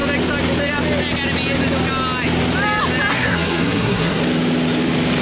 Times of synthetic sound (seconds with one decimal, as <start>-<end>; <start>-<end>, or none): 3.1-4.2